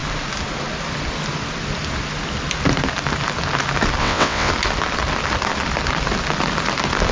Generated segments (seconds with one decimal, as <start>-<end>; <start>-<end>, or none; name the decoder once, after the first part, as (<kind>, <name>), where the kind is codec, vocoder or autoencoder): 4.0-4.5 (vocoder, WaveNeXt)